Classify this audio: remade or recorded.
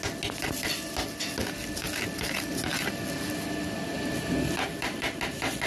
recorded